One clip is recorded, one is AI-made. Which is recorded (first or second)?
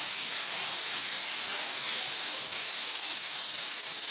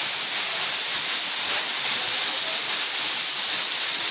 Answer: second